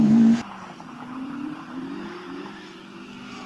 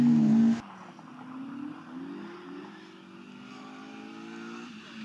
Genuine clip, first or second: second